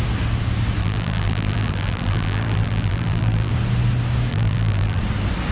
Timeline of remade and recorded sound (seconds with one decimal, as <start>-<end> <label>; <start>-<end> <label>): 0.0-0.8 recorded; 0.8-3.5 remade; 3.5-4.3 recorded; 4.3-5.0 remade; 5.0-5.5 recorded